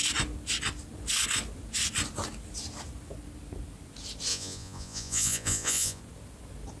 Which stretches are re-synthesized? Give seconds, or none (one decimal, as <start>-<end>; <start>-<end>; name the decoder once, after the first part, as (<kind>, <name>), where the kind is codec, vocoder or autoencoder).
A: 4.3-6.0 (vocoder, Vocos)